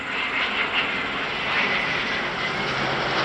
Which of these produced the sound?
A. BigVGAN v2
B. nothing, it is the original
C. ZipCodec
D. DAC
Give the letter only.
B